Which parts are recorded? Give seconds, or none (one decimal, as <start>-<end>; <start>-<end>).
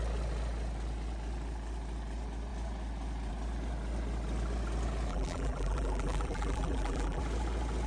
0.0-5.1; 7.2-7.9